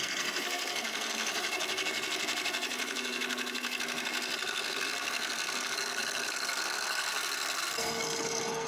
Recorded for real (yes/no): no